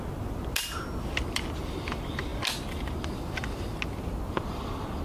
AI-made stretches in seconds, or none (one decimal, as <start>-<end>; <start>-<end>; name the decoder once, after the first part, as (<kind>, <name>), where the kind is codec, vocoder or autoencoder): none